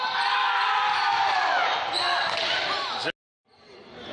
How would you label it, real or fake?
real